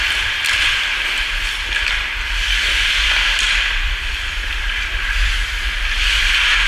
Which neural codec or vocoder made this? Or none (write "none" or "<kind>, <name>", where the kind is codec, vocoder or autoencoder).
none